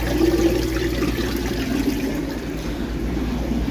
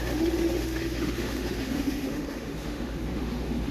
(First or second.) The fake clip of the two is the second